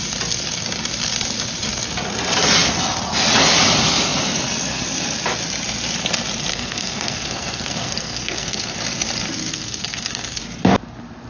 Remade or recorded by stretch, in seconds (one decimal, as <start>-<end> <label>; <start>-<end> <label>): 0.0-6.5 recorded; 6.5-8.8 remade; 8.8-9.5 recorded; 9.5-10.4 remade; 10.4-11.3 recorded